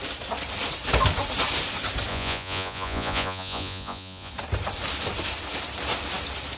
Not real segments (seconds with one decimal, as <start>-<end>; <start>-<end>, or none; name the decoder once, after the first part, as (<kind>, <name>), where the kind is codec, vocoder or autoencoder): 2.1-4.3 (vocoder, Vocos)